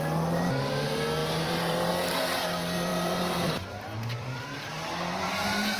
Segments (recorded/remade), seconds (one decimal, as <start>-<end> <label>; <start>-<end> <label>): 0.0-1.2 recorded; 1.2-1.9 remade; 1.9-2.9 recorded; 2.9-4.7 remade; 4.7-5.8 recorded